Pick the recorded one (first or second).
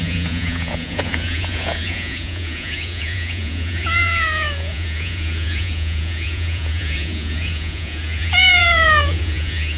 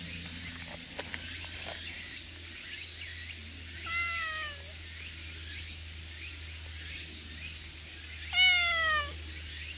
second